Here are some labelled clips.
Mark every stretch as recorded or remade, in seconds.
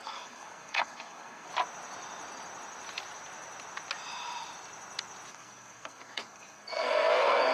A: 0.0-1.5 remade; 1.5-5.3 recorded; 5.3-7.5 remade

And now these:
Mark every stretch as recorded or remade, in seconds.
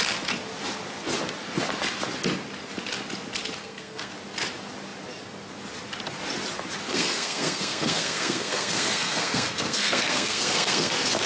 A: 0.0-3.6 recorded; 3.6-4.1 remade; 4.1-6.9 recorded; 6.9-10.9 remade; 10.9-11.3 recorded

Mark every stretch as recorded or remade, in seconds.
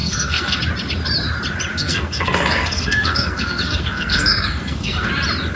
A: 0.0-0.6 remade; 0.6-1.7 recorded; 1.7-5.1 remade; 5.1-5.6 recorded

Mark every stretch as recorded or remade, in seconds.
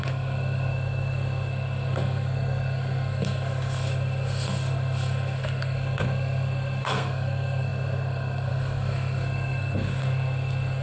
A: 0.0-10.8 remade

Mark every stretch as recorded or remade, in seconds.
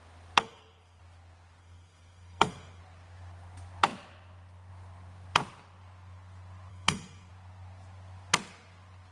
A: 0.0-0.4 recorded; 0.4-1.0 remade; 1.0-1.6 recorded; 1.6-2.8 remade; 2.8-6.7 recorded; 6.7-7.3 remade; 7.3-9.1 recorded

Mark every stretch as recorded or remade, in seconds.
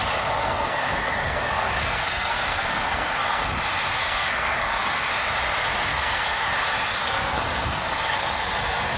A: 0.0-0.4 recorded; 0.4-3.5 remade; 3.5-4.0 recorded; 4.0-5.1 remade; 5.1-5.9 recorded; 5.9-6.4 remade; 6.4-7.0 recorded; 7.0-8.4 remade; 8.4-9.0 recorded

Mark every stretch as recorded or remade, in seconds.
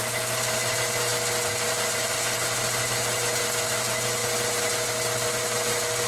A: 0.0-6.1 recorded